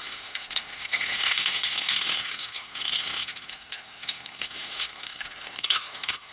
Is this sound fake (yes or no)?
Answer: yes